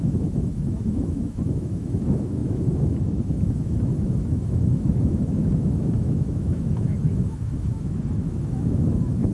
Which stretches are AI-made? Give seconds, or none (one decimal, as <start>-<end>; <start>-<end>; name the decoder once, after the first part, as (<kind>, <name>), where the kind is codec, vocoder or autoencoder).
0.0-9.3 (autoencoder, DAC-VAE)